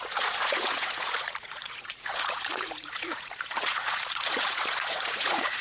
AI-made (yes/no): yes